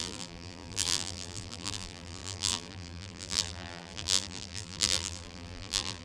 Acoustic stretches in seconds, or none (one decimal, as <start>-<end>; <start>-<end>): none